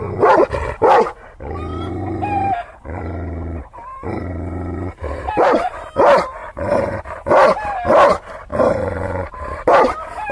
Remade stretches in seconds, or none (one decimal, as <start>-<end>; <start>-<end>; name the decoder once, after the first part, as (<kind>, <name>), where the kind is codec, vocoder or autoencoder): 1.7-5.8 (vocoder, BigVGAN v2); 6.4-7.0; 8.5-9.5